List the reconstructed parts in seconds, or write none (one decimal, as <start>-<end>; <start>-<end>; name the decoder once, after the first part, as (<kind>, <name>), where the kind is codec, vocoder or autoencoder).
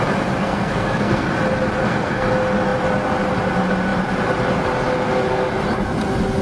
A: 0.4-1.3 (codec, SNAC); 1.8-2.3